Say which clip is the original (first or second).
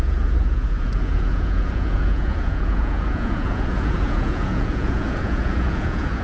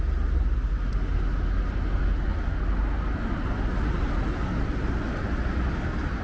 second